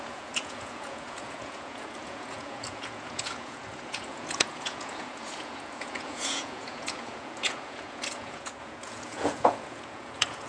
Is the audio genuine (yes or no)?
no